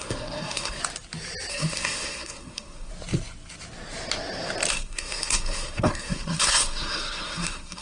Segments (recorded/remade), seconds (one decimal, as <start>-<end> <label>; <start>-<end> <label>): 0.0-0.8 remade; 0.8-1.5 recorded; 1.5-2.9 remade; 2.9-4.7 recorded; 4.7-7.8 remade